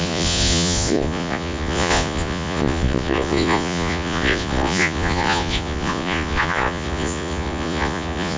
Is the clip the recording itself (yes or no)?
no